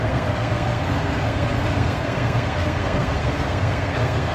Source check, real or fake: fake